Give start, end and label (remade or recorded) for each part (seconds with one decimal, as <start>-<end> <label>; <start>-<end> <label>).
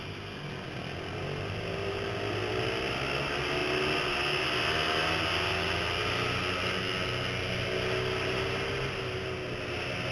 0.0-10.1 recorded